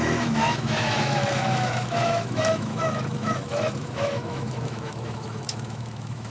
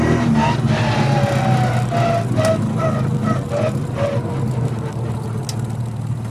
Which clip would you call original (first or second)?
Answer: second